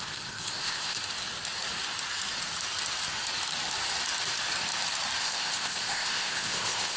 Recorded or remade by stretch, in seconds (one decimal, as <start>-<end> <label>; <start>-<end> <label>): 0.0-1.0 remade; 1.0-5.2 recorded; 5.2-7.0 remade